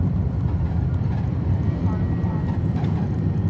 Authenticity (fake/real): real